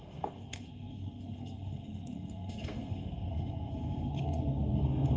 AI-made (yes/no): yes